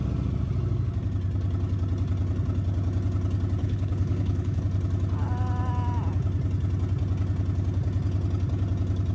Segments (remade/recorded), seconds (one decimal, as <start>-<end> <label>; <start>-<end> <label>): 0.0-3.6 recorded; 3.6-4.6 remade; 4.6-9.1 recorded